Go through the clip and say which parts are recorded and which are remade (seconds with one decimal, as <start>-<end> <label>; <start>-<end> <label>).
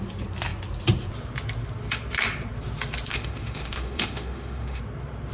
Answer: 0.0-3.1 recorded; 3.1-4.8 remade; 4.8-5.3 recorded